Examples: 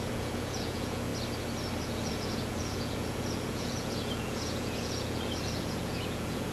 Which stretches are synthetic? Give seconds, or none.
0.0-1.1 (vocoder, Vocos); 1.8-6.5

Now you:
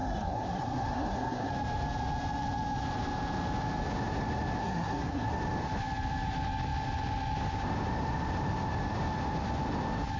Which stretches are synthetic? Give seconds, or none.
0.0-1.5 (codec, SNAC); 4.6-5.3

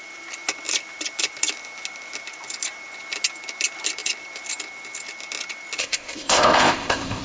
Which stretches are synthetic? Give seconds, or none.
5.8-7.2 (codec, ZipCodec)

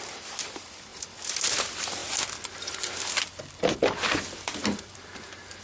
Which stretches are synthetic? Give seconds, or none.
0.0-2.0 (vocoder, BigVGAN v2); 3.1-5.6

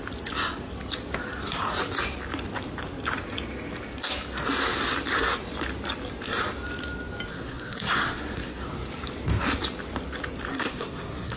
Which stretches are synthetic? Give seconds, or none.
7.3-8.6 (codec, SNAC); 10.5-11.4

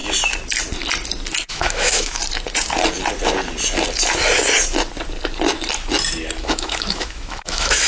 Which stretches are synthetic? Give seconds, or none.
1.5-2.2 (autoencoder, DAC-VAE); 6.4-7.9

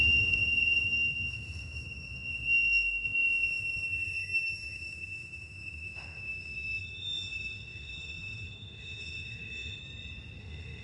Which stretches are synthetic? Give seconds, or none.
0.0-9.8 (autoencoder, DAC-VAE); 10.4-10.8

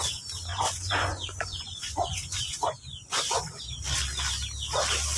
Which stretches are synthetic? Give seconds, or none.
0.5-3.6 (vocoder, Vocos)